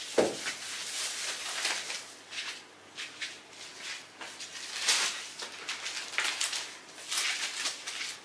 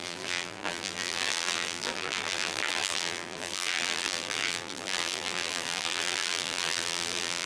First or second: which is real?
first